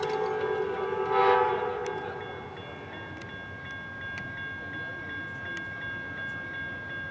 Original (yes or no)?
yes